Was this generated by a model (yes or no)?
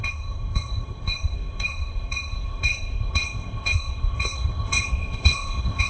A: yes